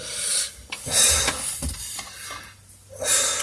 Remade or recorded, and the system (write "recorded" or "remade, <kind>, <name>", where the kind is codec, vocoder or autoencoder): recorded